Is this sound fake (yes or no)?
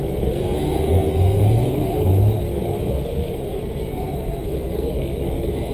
yes